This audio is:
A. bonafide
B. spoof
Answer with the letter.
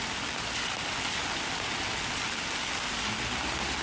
A